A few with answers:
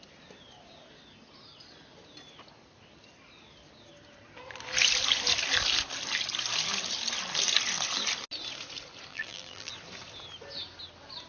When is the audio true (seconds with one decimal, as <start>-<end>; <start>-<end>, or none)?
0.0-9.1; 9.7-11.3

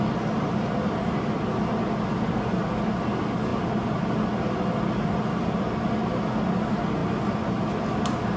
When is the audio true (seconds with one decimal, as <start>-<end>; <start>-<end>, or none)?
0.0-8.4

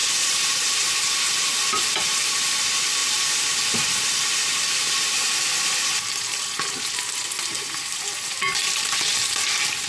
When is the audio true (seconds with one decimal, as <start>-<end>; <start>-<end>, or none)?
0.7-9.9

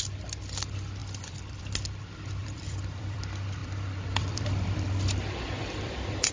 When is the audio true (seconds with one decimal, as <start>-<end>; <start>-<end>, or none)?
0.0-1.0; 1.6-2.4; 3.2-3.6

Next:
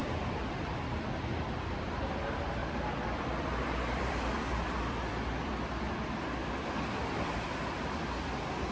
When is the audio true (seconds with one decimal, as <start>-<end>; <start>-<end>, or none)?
0.0-2.6; 6.1-8.7